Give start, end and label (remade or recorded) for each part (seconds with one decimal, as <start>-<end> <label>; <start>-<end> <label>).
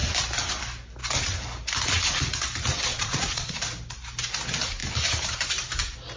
0.0-2.9 recorded; 2.9-3.6 remade; 3.6-6.2 recorded